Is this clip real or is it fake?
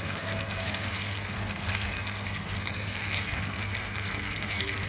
fake